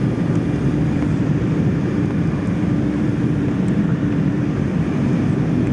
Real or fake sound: fake